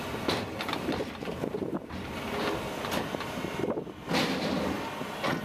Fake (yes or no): no